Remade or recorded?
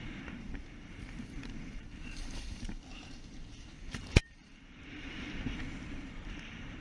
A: remade